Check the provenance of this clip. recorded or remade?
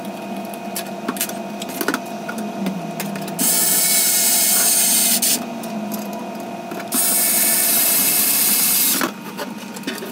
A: recorded